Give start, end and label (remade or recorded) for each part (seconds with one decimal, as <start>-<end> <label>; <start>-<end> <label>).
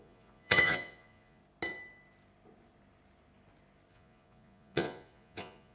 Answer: 0.0-1.4 remade; 1.4-3.9 recorded; 3.9-5.7 remade